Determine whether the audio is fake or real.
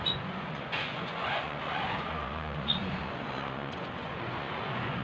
fake